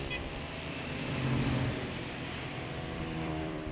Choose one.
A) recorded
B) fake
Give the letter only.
B